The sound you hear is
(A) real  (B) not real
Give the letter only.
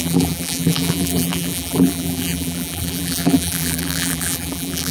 B